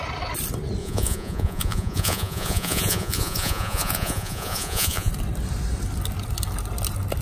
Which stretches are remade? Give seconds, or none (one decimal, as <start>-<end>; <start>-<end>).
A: 0.8-5.1